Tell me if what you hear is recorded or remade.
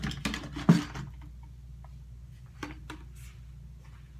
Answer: recorded